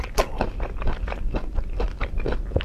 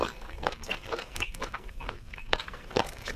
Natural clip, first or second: first